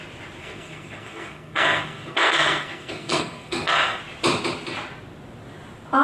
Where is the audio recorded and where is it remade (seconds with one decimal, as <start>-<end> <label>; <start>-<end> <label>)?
0.0-0.4 recorded; 0.4-4.0 remade; 4.0-6.0 recorded